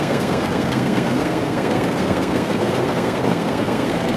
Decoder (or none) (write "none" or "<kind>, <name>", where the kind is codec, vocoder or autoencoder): codec, SNAC